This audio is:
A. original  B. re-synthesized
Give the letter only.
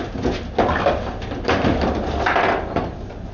A